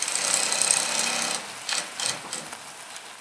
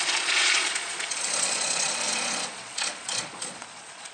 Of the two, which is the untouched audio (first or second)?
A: first